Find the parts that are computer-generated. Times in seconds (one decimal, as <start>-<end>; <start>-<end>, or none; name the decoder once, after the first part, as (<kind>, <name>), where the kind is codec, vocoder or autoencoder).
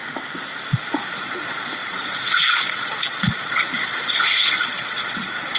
0.8-5.6 (vocoder, Vocos)